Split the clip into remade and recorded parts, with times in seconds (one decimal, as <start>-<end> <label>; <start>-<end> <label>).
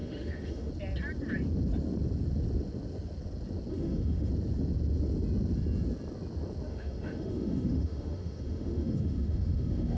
0.0-0.7 remade; 0.7-3.7 recorded; 3.7-4.3 remade; 4.3-6.7 recorded; 6.7-10.0 remade